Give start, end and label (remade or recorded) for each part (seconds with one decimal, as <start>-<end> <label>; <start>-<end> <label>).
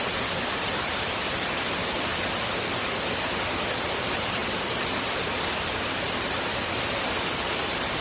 0.0-2.1 remade; 2.1-4.0 recorded; 4.0-4.4 remade; 4.4-6.4 recorded; 6.4-8.0 remade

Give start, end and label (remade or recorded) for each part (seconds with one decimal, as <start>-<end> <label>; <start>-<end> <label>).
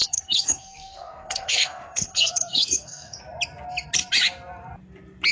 0.0-3.2 remade; 3.2-5.3 recorded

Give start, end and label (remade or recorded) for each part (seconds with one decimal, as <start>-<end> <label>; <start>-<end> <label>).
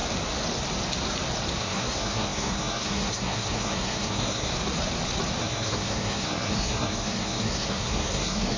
0.0-1.6 recorded; 1.6-4.5 remade; 4.5-5.4 recorded; 5.4-8.6 remade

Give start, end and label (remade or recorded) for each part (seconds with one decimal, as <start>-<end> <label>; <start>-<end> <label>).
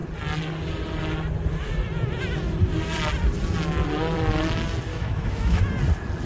0.0-4.9 recorded; 4.9-5.6 remade; 5.6-6.3 recorded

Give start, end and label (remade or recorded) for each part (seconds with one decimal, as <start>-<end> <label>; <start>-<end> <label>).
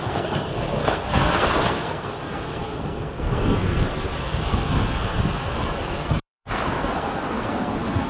0.0-8.1 remade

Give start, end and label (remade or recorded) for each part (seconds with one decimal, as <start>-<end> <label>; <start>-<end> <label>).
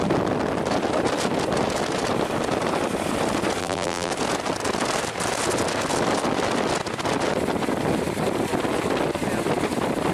0.0-3.6 recorded; 3.6-4.1 remade; 4.1-10.1 recorded